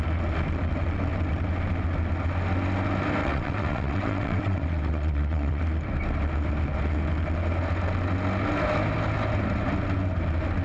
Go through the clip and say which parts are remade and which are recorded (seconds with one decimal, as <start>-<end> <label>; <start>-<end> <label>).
0.0-3.2 recorded; 3.2-5.6 remade; 5.6-10.6 recorded